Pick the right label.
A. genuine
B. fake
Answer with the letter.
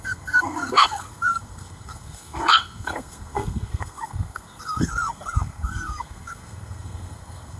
B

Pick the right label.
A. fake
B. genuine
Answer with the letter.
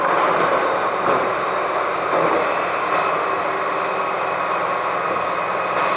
B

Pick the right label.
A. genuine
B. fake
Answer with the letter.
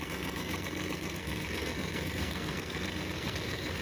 B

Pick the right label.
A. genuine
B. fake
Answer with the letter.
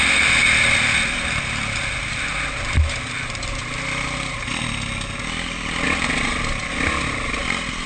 A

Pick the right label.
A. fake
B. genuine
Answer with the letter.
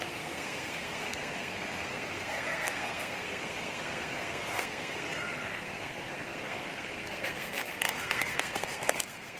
A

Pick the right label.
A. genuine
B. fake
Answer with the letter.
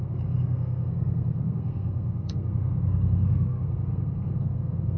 B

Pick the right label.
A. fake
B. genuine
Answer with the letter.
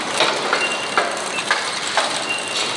B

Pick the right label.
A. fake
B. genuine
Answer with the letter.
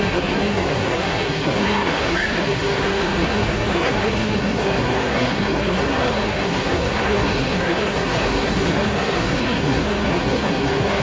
A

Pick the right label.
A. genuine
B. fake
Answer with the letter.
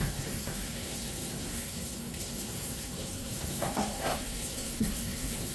B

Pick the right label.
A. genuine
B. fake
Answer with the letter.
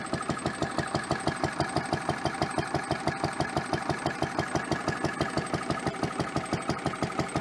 A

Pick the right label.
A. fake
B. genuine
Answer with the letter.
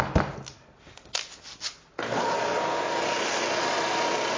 B